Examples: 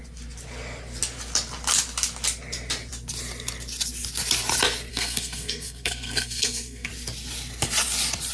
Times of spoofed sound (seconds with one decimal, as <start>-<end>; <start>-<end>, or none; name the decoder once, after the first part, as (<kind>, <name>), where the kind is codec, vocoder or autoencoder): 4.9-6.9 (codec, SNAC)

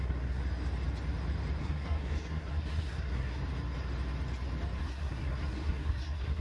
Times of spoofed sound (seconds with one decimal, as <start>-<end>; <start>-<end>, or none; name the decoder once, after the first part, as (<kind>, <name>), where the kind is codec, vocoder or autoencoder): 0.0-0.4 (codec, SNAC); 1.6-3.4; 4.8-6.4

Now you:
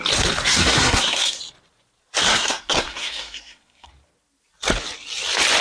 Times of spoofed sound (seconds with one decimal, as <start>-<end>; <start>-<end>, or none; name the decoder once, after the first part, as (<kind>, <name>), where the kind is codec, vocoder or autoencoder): 0.5-1.4 (codec, SNAC); 2.3-3.9

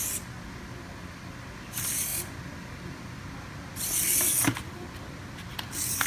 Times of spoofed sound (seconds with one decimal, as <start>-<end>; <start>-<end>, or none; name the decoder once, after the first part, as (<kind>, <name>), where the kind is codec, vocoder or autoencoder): none

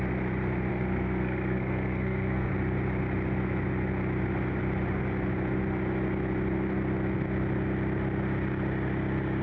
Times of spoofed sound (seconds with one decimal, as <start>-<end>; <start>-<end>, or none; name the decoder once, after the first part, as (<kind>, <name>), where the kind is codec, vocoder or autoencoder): 0.7-2.5 (codec, SNAC)

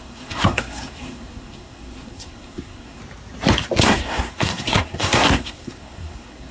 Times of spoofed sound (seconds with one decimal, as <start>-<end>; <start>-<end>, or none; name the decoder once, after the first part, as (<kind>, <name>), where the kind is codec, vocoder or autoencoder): 0.0-3.0 (codec, SNAC); 3.8-6.5

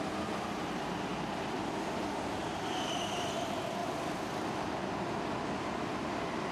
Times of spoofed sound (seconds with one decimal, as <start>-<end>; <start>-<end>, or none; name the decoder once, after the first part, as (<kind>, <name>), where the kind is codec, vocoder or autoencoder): none

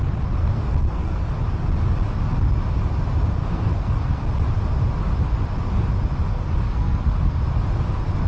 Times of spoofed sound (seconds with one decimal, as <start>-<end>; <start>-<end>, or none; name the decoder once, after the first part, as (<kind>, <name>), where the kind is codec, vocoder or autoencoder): 0.4-1.3 (codec, SNAC); 3.4-4.2; 6.3-7.4